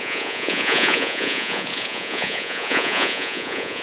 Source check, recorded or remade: remade